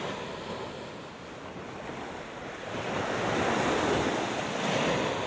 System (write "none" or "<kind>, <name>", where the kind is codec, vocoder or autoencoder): none